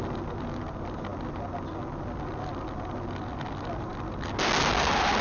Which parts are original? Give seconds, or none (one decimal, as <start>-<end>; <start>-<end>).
0.0-5.2